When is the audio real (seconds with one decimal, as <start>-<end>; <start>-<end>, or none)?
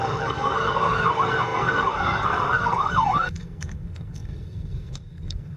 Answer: none